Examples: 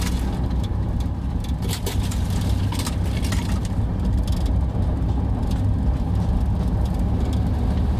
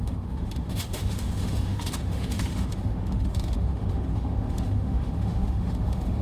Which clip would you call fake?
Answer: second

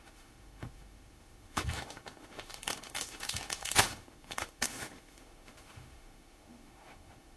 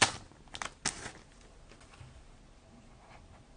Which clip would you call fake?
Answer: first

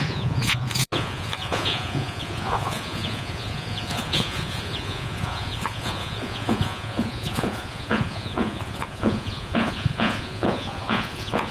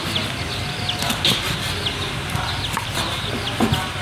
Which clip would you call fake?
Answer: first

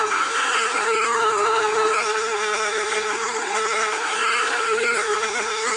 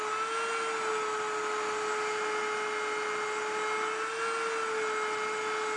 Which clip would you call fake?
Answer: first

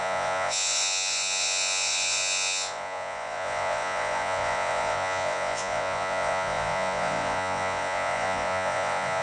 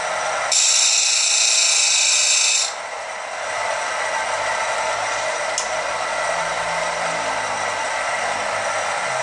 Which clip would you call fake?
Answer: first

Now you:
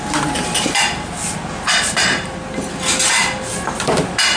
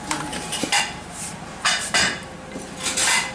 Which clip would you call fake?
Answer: second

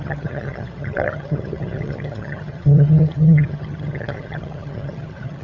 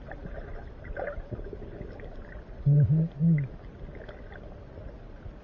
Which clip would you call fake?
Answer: first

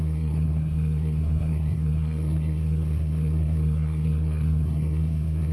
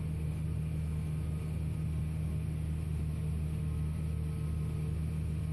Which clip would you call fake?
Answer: first